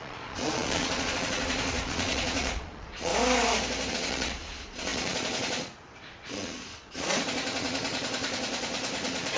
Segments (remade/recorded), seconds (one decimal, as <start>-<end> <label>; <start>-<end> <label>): 0.0-3.1 remade; 3.1-3.9 recorded; 3.9-9.4 remade